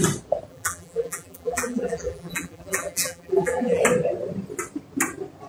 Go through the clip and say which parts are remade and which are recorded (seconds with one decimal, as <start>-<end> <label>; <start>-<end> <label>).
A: 0.0-0.5 recorded; 0.5-3.8 remade; 3.8-5.5 recorded

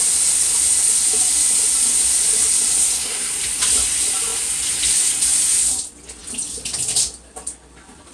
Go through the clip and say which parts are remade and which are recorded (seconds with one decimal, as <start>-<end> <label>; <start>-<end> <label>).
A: 0.0-2.8 recorded; 2.8-3.3 remade; 3.3-8.1 recorded